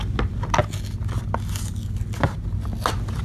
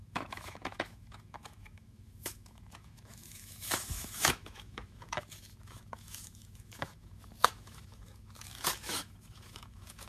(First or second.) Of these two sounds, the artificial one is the second